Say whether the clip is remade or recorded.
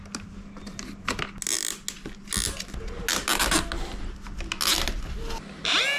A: recorded